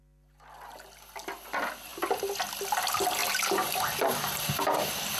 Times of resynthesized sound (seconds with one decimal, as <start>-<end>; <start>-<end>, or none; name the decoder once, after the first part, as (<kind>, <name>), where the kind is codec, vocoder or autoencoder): none